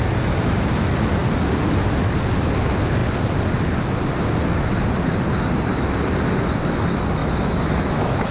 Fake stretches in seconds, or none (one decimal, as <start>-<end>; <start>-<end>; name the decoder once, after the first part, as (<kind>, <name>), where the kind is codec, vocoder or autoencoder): 7.2-8.3 (autoencoder, DAC-VAE)

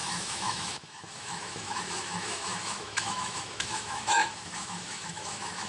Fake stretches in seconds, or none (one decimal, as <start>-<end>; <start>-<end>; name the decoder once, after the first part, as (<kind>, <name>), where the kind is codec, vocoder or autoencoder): 0.0-5.7 (autoencoder, DAC-VAE)